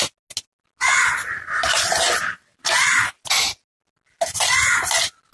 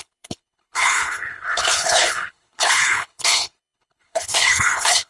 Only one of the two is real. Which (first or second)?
first